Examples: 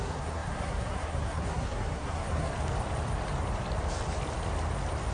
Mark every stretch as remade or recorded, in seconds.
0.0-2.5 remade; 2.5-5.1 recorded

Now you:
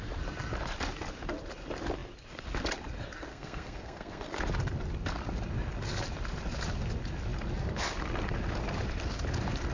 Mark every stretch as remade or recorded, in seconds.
0.0-3.3 recorded; 3.3-4.3 remade; 4.3-9.7 recorded